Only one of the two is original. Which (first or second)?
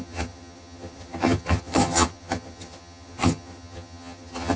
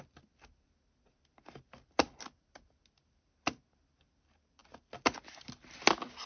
second